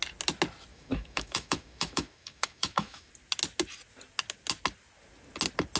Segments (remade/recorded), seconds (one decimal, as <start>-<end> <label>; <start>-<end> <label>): 0.0-0.7 recorded; 0.7-3.1 remade; 3.1-5.8 recorded